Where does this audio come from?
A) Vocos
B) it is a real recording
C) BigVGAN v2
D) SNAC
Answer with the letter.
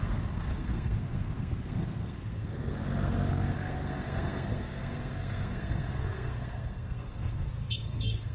D